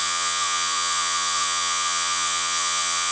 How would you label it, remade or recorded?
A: remade